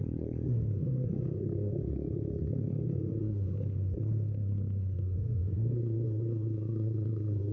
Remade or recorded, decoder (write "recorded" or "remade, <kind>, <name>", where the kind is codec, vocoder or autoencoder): remade, codec, SNAC